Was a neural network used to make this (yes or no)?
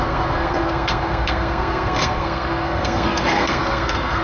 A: yes